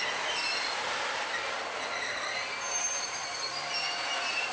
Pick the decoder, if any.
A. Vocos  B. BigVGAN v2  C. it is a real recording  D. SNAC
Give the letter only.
B